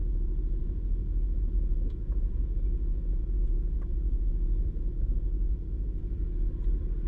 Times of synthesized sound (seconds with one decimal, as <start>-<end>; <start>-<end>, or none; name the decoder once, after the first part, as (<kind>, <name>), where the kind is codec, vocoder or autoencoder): 0.0-4.3 (vocoder, Vocos); 4.9-6.0